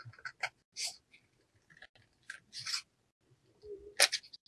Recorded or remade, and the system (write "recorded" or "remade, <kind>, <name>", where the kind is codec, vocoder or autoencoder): recorded